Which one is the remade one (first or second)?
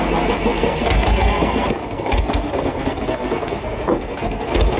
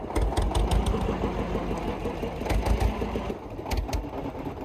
first